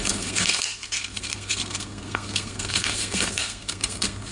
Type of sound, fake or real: fake